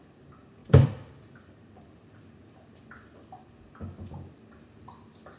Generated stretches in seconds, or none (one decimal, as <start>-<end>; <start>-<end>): 0.6-2.8